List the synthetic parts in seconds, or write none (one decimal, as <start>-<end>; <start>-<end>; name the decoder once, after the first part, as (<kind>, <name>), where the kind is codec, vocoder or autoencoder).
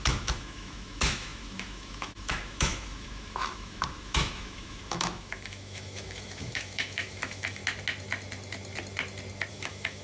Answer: 0.0-7.6 (autoencoder, DAC-VAE); 9.5-10.0